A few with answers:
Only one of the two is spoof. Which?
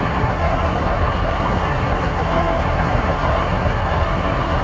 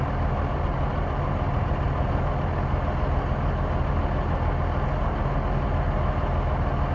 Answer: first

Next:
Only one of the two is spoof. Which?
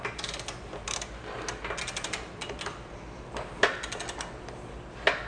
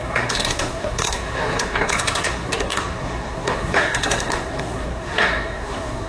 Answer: second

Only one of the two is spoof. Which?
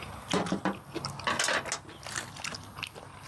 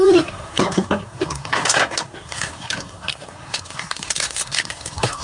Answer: second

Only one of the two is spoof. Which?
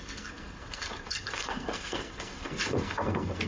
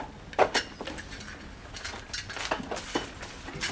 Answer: first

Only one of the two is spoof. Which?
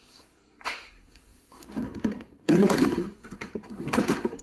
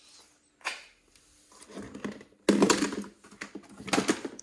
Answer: first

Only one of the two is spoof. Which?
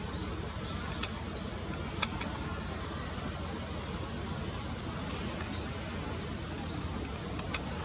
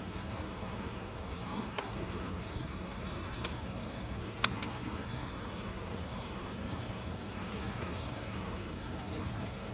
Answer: second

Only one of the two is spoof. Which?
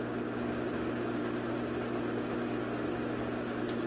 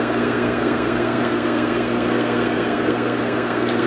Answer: second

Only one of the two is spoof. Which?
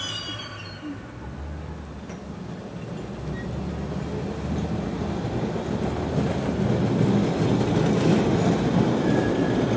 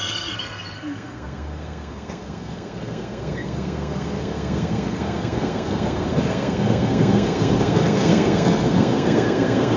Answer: second